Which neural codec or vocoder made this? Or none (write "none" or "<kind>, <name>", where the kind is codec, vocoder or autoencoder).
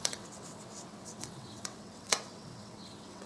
vocoder, WaveNeXt